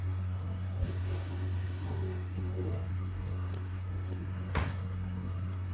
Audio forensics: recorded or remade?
remade